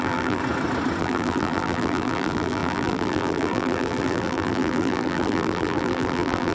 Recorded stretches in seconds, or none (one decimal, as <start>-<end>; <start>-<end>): 0.4-1.0